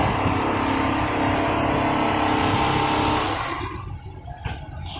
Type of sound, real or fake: real